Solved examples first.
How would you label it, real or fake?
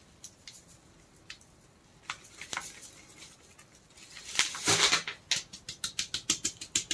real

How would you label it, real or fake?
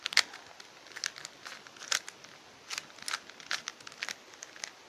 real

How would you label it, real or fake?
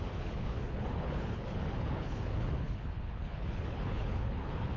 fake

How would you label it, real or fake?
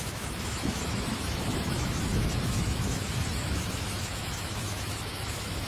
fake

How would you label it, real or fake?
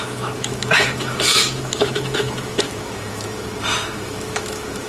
fake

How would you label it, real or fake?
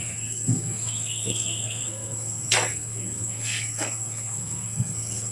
fake